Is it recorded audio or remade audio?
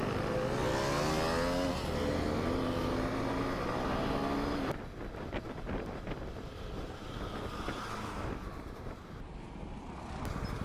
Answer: recorded